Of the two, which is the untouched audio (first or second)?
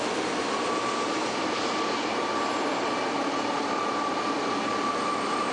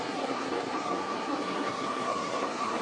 first